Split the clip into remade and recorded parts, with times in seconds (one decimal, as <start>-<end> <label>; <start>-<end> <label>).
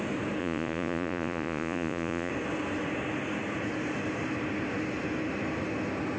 0.0-0.4 recorded; 0.4-2.3 remade; 2.3-6.2 recorded